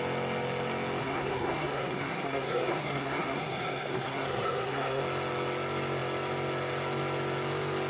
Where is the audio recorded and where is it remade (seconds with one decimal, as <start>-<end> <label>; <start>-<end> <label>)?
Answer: 0.0-1.0 recorded; 1.0-5.0 remade; 5.0-7.9 recorded